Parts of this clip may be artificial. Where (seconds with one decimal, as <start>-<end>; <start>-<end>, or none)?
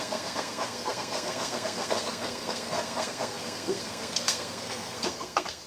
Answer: 0.0-5.7